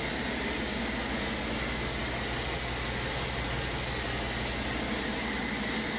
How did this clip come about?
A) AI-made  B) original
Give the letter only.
B